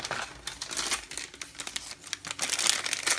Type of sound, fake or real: real